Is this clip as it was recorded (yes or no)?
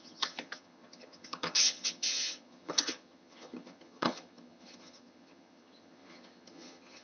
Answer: no